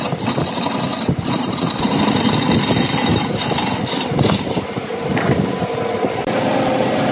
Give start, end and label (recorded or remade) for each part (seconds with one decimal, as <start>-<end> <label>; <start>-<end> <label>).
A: 0.0-0.9 recorded; 0.9-2.0 remade; 2.0-3.1 recorded; 3.1-6.1 remade; 6.1-7.1 recorded